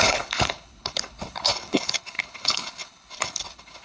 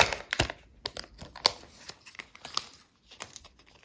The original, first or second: second